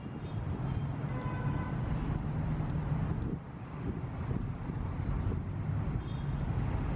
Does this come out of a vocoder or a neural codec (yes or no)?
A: no